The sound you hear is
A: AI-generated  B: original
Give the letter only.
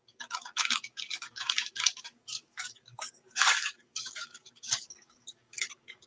A